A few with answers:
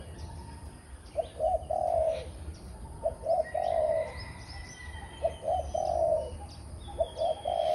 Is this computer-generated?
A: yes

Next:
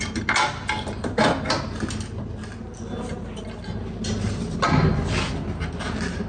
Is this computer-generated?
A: no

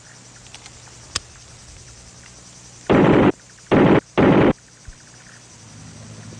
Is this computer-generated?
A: no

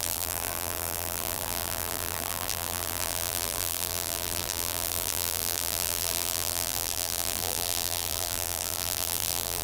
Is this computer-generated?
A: yes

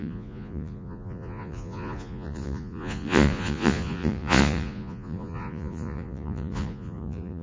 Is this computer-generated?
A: yes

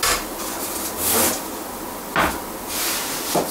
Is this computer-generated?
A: no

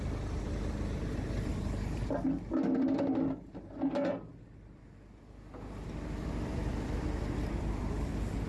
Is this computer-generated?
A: no